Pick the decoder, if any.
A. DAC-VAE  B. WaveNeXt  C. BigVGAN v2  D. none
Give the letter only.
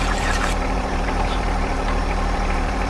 C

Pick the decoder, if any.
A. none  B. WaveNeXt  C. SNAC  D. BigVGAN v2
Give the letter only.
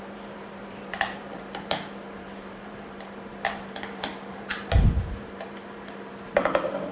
D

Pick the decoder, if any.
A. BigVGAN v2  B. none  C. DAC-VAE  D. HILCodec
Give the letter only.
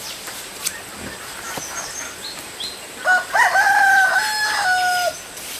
B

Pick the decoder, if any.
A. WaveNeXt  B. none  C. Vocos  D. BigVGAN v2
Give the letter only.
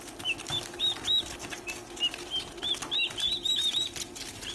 B